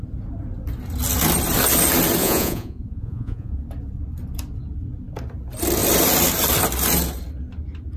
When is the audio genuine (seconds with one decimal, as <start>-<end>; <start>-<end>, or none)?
0.0-2.2; 3.6-8.0